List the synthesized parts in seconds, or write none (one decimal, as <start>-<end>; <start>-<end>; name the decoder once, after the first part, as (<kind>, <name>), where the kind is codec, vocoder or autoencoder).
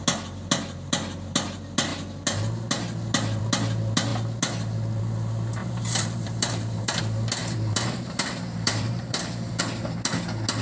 5.6-7.0 (vocoder, BigVGAN v2); 7.4-9.6